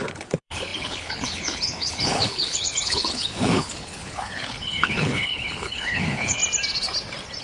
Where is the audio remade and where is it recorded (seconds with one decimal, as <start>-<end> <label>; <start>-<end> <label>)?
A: 0.0-6.4 remade; 6.4-7.4 recorded